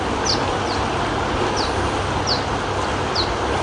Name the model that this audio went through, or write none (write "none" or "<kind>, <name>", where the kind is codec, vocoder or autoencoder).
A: none